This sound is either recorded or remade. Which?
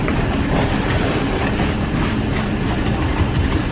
recorded